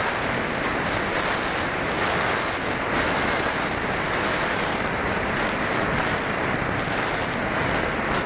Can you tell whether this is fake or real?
real